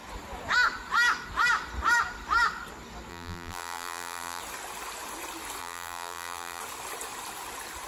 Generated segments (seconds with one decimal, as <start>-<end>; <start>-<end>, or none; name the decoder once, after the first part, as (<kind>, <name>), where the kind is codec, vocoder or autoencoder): 3.1-4.4 (vocoder, BigVGAN v2); 5.6-6.6